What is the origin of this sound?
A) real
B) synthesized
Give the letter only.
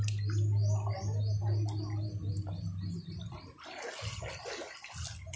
A